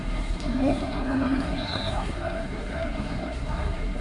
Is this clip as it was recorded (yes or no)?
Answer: no